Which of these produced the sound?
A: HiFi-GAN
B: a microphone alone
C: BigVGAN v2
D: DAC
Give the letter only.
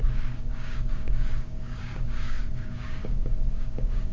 D